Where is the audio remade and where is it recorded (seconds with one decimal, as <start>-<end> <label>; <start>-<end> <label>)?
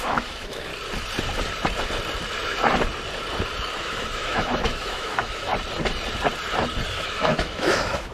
0.0-0.7 remade; 0.7-3.8 recorded; 3.8-5.5 remade; 5.5-6.9 recorded; 6.9-8.1 remade